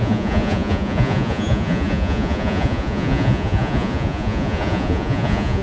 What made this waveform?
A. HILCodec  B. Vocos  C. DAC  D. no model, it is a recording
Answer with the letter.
B